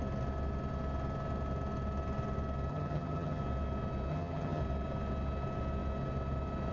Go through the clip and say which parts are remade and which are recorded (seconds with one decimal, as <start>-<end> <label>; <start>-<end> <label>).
0.0-2.7 recorded; 2.7-3.4 remade; 3.4-4.1 recorded; 4.1-4.6 remade; 4.6-6.7 recorded